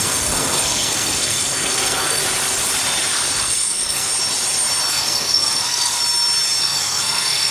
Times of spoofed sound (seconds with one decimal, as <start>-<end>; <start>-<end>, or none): 0.0-2.2; 3.4-4.1; 4.9-6.0; 6.6-7.5